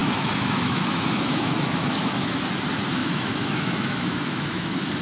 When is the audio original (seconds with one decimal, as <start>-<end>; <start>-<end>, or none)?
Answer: 2.4-3.0